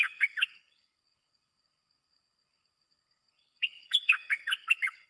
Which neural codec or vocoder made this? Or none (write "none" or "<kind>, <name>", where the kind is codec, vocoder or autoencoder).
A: codec, HILCodec